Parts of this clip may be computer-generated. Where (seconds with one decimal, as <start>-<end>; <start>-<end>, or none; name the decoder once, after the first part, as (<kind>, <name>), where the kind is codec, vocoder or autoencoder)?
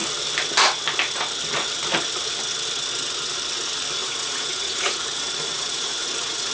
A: 4.0-6.5 (vocoder, Vocos)